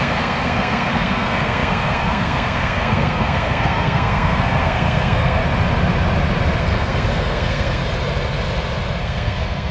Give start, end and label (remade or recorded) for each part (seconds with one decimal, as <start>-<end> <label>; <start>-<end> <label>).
0.0-5.4 remade; 5.4-6.6 recorded; 6.6-7.8 remade; 7.8-9.0 recorded; 9.0-9.7 remade